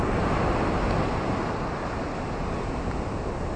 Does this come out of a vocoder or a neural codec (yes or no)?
no